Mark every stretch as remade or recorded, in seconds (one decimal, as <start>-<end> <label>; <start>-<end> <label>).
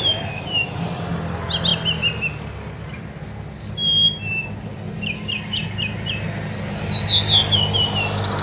0.0-8.4 recorded